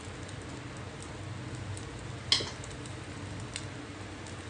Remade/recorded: recorded